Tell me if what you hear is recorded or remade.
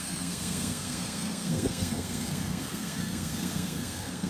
remade